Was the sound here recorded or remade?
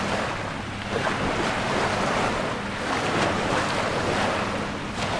recorded